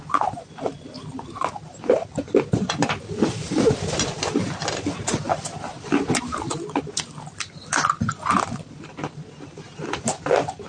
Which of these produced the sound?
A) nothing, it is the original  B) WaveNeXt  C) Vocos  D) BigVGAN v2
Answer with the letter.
D